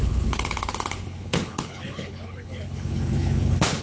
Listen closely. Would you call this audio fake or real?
fake